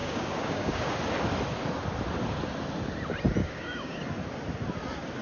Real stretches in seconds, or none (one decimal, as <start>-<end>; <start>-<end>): 0.9-3.4; 4.0-5.2